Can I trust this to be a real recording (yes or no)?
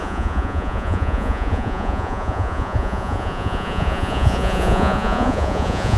no